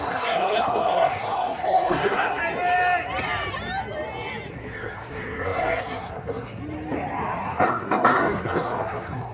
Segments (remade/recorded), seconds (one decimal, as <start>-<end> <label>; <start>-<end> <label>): 0.0-2.4 remade; 2.4-4.5 recorded; 4.5-6.6 remade; 6.6-7.4 recorded; 7.4-9.3 remade